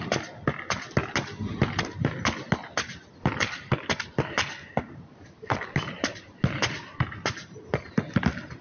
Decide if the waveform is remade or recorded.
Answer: recorded